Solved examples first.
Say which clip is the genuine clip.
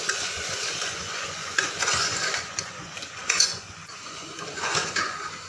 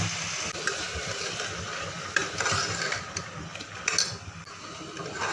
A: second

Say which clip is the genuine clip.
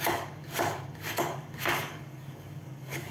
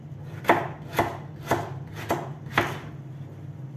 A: second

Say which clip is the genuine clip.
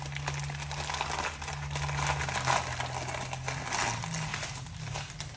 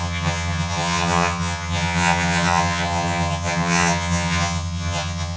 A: first